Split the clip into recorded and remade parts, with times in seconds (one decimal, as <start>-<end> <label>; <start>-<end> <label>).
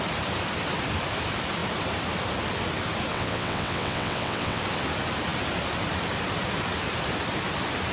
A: 0.0-3.1 recorded; 3.1-4.6 remade; 4.6-7.9 recorded